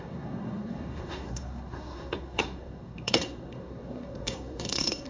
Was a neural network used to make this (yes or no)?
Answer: yes